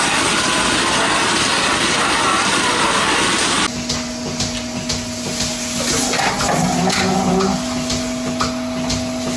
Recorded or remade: recorded